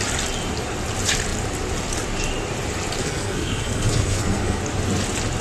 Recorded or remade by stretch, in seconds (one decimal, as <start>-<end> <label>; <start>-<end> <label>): 0.0-3.0 recorded; 3.0-4.6 remade; 4.6-5.4 recorded

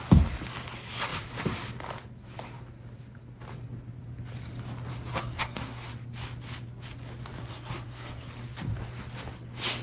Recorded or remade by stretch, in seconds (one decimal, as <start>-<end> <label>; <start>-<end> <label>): 0.0-5.1 recorded; 5.1-5.9 remade; 5.9-7.4 recorded; 7.4-8.3 remade; 8.3-9.8 recorded

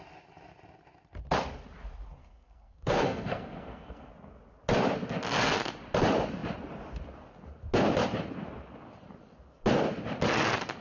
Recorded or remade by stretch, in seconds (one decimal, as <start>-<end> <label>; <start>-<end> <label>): 0.0-2.2 recorded; 2.2-4.1 remade; 4.1-10.8 recorded

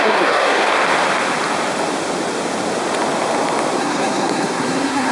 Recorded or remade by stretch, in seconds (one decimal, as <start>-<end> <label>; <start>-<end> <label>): 0.0-0.7 remade; 0.7-3.8 recorded; 3.8-5.1 remade